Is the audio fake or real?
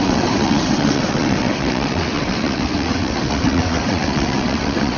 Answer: fake